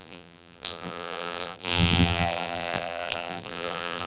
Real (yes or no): no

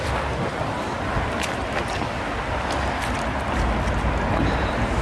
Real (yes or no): yes